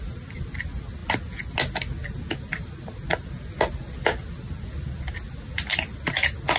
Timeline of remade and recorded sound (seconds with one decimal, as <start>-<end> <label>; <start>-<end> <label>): 0.0-6.6 recorded